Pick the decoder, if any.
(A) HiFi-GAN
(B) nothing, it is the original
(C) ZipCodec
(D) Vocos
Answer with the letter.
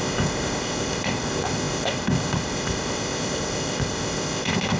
C